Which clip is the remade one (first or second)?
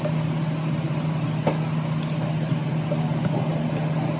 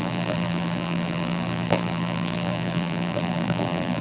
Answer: second